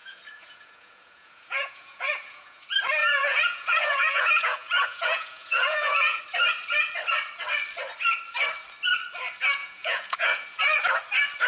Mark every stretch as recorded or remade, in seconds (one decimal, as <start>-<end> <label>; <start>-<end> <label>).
0.0-2.6 remade; 2.6-3.0 recorded; 3.0-6.2 remade; 6.2-9.6 recorded; 9.6-10.6 remade; 10.6-11.5 recorded